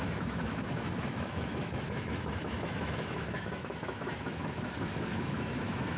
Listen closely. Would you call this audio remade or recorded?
remade